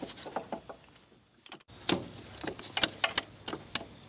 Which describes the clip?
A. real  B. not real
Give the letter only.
A